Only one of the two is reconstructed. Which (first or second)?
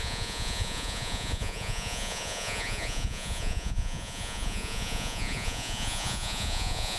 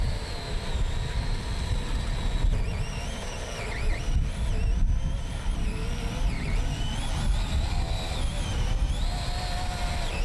first